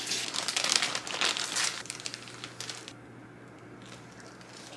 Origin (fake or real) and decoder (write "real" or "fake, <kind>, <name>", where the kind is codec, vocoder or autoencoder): real